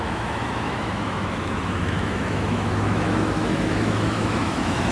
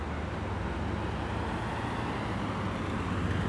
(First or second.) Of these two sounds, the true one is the second